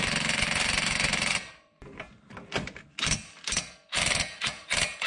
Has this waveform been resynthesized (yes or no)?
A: no